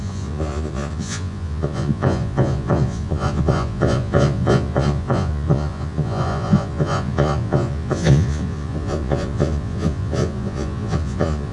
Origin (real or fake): fake